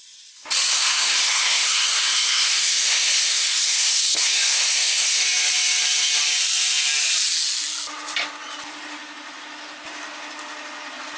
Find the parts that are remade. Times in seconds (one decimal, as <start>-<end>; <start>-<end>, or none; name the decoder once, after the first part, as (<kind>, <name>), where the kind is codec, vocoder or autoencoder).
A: 0.7-5.2 (codec, SNAC)